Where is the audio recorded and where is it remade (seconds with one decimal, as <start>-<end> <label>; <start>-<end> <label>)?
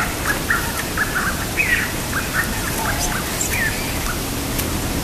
0.0-5.0 recorded